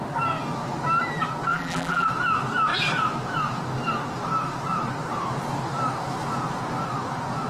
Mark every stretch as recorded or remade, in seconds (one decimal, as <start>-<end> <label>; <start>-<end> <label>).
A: 0.0-1.5 recorded; 1.5-2.1 remade; 2.1-7.5 recorded